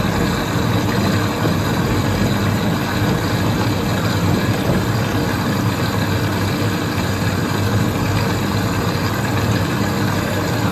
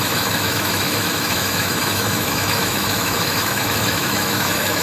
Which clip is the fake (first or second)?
second